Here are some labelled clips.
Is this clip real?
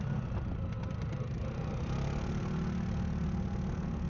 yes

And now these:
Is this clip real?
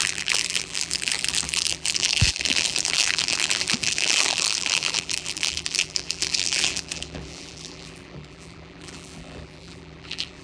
no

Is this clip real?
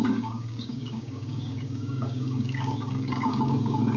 no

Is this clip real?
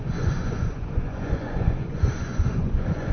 no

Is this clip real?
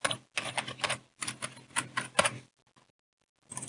yes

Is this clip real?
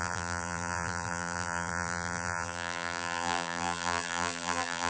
no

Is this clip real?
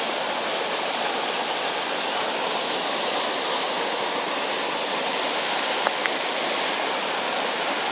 yes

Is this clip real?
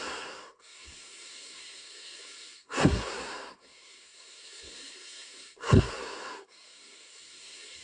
no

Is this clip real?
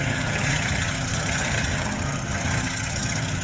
no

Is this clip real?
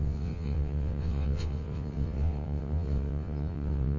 no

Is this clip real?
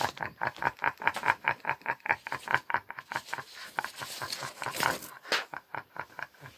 yes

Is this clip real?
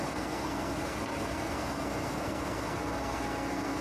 no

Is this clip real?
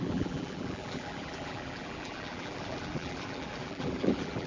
no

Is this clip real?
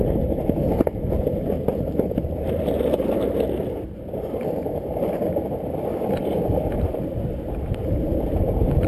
no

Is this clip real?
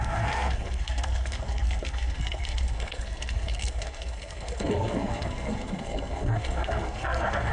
no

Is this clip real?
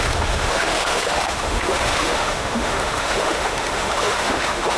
no